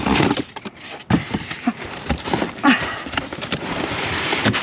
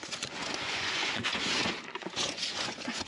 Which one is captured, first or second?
first